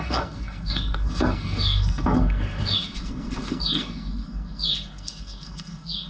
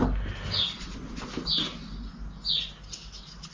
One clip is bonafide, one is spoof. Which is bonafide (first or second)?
second